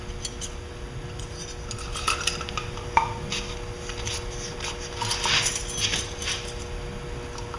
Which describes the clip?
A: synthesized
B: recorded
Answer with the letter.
B